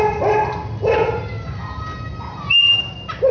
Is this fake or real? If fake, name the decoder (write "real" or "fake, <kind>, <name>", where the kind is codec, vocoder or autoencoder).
real